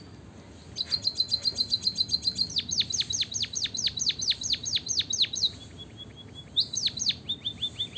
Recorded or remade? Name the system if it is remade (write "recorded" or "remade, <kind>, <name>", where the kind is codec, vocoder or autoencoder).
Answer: recorded